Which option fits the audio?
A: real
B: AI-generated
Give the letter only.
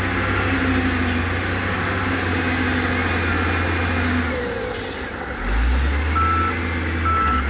A